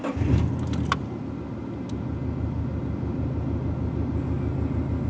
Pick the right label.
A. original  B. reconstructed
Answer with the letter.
A